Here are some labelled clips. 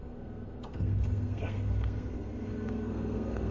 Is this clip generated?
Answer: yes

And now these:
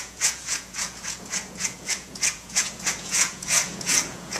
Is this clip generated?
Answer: yes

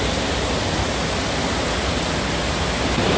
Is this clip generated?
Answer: no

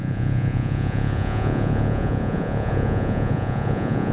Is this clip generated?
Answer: yes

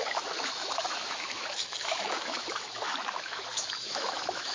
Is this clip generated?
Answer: yes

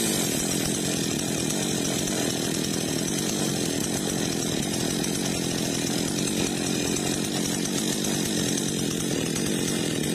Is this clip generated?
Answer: no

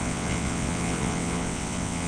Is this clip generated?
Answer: yes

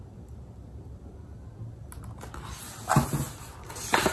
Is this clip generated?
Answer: no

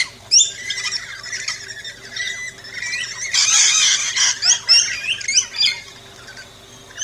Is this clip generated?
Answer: no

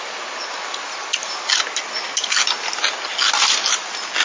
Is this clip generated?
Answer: no